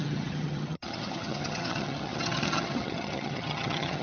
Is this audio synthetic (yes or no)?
yes